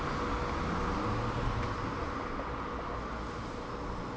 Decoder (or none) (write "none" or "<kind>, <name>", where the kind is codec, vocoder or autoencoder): none